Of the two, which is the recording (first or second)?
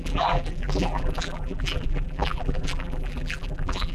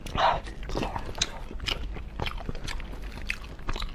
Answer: second